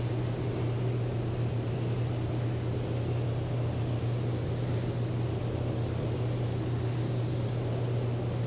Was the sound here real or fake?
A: real